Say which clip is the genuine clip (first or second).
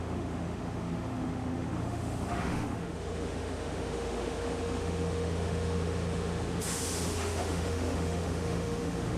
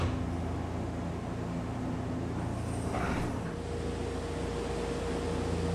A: second